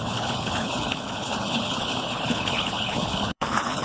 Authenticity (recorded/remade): remade